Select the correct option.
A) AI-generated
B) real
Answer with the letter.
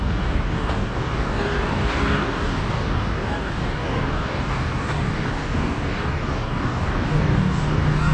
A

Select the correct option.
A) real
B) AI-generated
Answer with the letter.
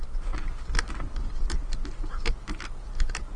A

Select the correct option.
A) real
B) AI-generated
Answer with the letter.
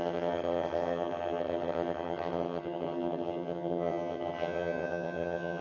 B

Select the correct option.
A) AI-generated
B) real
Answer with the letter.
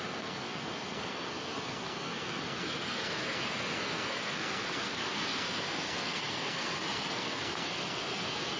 A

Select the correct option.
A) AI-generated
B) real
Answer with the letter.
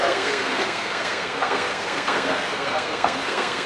A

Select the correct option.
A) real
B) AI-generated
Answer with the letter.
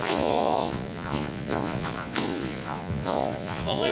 B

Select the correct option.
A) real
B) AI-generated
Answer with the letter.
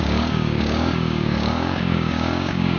B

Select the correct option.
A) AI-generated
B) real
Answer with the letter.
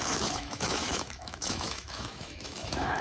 A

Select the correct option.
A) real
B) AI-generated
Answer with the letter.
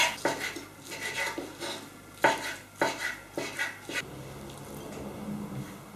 A